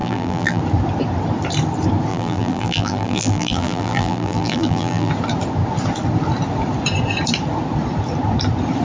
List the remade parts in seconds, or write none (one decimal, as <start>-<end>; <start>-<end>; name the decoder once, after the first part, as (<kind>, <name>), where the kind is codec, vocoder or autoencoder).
0.0-0.6 (vocoder, BigVGAN v2); 2.1-5.1